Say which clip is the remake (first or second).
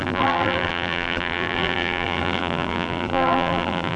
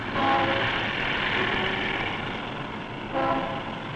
first